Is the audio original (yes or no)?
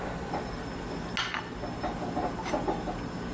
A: yes